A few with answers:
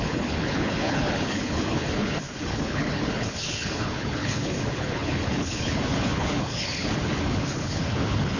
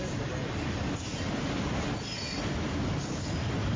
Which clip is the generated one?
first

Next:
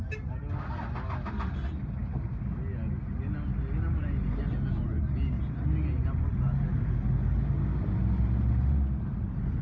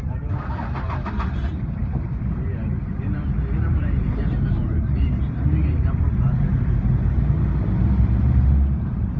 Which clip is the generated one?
second